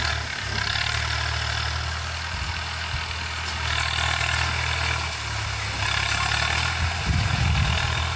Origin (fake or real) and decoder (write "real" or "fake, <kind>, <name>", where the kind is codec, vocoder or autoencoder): real